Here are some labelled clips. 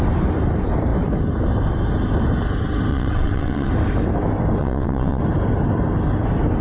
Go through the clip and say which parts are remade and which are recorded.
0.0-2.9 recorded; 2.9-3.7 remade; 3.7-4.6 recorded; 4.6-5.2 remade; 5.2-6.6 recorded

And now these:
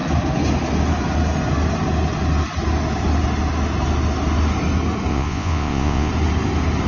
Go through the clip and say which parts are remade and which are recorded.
0.0-5.1 recorded; 5.1-6.1 remade; 6.1-6.9 recorded

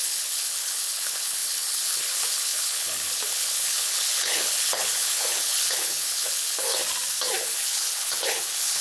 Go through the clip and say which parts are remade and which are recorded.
0.0-6.8 remade; 6.8-7.4 recorded; 7.4-8.8 remade

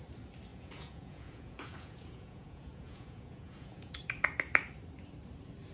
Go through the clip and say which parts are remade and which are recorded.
0.0-0.5 recorded; 0.5-3.9 remade; 3.9-5.7 recorded

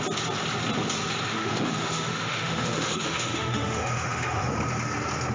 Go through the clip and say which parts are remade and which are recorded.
0.0-1.3 recorded; 1.3-4.5 remade; 4.5-5.3 recorded

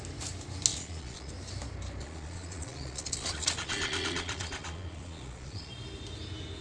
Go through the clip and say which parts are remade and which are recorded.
0.0-0.7 recorded; 0.7-1.3 remade; 1.3-2.0 recorded; 2.0-5.7 remade; 5.7-6.6 recorded

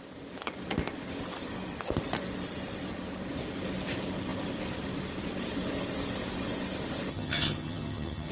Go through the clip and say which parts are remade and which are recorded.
0.0-7.1 recorded; 7.1-8.3 remade